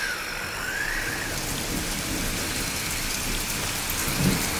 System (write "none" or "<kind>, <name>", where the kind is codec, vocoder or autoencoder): none